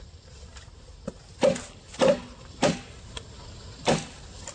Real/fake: real